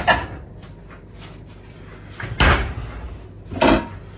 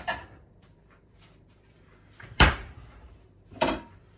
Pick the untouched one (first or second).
first